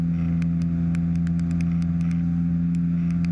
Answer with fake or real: real